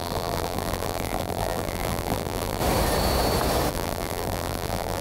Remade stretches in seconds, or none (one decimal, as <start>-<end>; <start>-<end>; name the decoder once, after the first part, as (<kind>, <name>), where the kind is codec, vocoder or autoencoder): 0.0-2.6 (vocoder, BigVGAN v2); 3.7-5.0